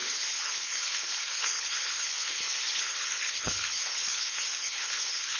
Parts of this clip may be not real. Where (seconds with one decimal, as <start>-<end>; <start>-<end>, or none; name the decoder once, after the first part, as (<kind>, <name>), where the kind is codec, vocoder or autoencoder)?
0.0-5.4 (codec, HILCodec)